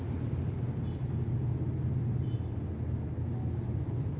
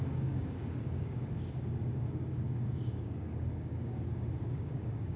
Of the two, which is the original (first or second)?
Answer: first